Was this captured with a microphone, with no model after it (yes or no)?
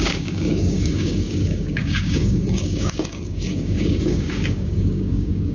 no